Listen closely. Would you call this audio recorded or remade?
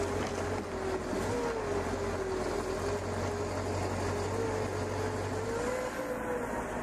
recorded